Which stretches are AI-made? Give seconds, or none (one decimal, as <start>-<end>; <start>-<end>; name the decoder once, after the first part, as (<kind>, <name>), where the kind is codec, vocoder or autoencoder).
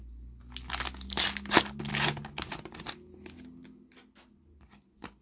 none